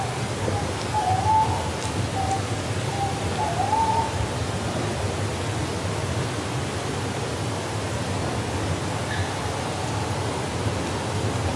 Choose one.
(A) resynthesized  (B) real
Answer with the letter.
B